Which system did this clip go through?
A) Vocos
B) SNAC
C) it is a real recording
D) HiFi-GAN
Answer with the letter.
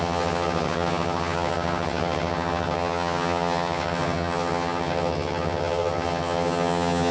D